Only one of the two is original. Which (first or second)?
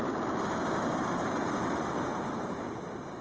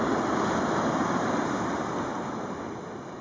second